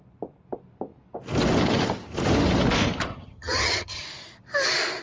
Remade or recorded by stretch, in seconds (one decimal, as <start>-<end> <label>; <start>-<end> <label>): 0.0-3.1 recorded; 3.1-4.0 remade; 4.0-5.0 recorded